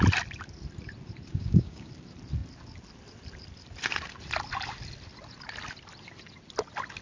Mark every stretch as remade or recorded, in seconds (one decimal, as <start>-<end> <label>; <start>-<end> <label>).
0.0-1.3 recorded; 1.3-1.9 remade; 1.9-7.0 recorded